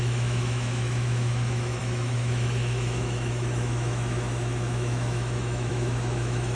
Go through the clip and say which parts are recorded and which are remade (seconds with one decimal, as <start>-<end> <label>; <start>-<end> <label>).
0.0-6.5 remade